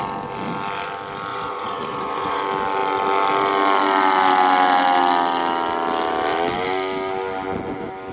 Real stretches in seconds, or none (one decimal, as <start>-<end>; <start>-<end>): 0.0-1.3; 2.4-8.1